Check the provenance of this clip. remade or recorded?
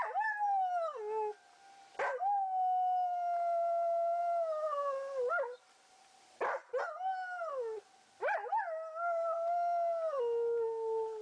recorded